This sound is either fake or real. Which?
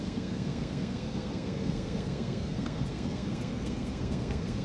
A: fake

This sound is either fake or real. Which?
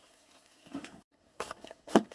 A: fake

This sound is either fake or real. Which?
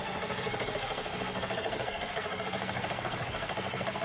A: fake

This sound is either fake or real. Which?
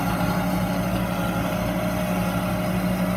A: real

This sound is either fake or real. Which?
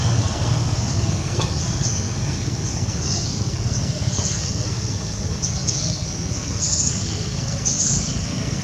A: fake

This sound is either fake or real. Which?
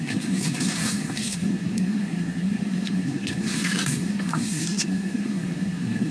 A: fake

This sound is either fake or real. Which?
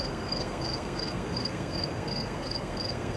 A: fake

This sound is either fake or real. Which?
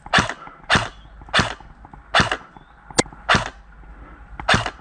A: real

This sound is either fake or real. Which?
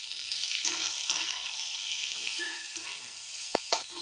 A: fake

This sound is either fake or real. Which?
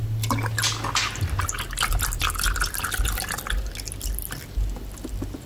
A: real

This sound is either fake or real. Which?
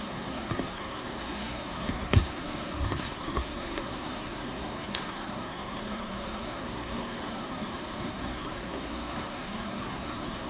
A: fake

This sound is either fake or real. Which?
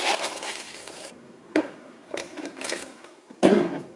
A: fake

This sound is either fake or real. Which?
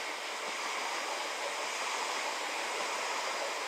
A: real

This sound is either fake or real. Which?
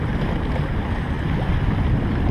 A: real